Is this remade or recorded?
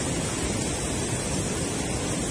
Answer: recorded